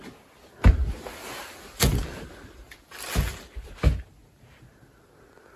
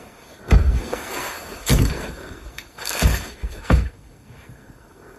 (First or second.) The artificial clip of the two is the second